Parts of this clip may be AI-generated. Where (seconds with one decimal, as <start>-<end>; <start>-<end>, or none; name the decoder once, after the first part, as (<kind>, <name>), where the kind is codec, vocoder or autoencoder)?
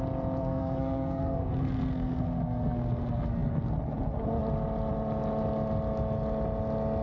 0.4-3.5 (codec, SNAC)